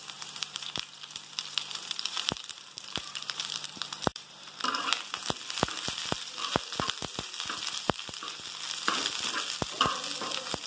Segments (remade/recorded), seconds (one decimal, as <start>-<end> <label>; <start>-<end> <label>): 0.0-5.0 remade; 5.0-10.7 recorded